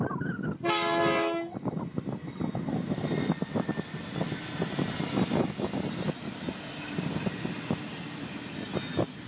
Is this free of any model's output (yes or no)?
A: yes